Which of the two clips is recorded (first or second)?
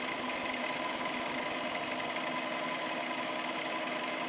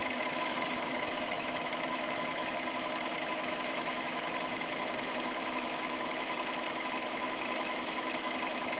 first